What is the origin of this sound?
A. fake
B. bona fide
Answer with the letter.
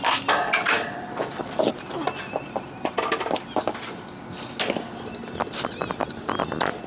B